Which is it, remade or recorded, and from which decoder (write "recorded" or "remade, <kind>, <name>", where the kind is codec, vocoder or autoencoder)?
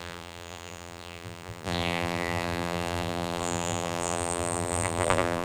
remade, vocoder, BigVGAN v2